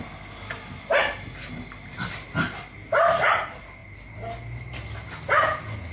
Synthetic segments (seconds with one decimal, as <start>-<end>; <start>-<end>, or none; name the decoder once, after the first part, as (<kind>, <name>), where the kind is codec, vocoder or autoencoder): none